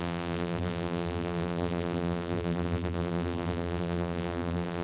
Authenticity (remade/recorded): remade